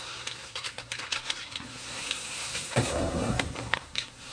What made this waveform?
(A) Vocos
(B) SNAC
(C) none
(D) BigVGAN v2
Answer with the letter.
B